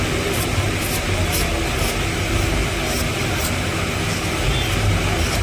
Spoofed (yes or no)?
no